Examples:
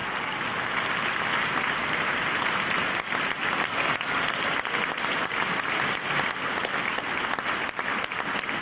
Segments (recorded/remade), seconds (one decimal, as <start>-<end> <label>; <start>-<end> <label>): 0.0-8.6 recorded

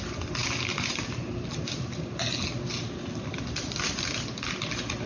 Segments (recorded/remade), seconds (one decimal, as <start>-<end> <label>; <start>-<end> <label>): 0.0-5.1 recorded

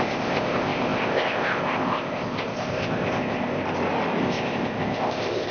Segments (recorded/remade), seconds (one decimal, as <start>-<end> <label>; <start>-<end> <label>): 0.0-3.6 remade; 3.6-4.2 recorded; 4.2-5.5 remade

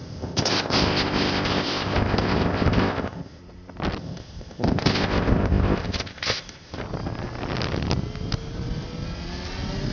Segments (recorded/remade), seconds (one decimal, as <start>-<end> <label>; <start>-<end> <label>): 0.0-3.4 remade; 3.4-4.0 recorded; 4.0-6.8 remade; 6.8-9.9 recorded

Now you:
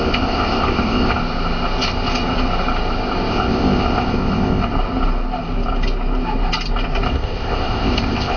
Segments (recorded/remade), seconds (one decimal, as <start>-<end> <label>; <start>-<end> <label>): 0.0-1.2 remade; 1.2-3.3 recorded; 3.3-4.7 remade; 4.7-7.1 recorded; 7.1-8.4 remade

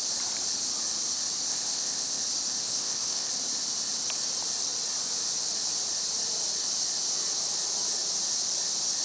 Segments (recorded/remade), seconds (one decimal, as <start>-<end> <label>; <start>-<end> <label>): 0.0-1.5 recorded; 1.5-2.2 remade; 2.2-2.6 recorded; 2.6-3.3 remade; 3.3-9.0 recorded

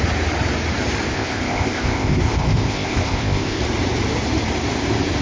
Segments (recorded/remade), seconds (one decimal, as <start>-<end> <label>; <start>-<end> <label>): 0.0-1.1 recorded; 1.1-3.6 remade; 3.6-5.2 recorded